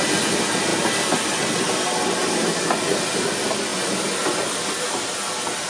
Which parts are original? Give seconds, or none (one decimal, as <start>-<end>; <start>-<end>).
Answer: 0.0-5.7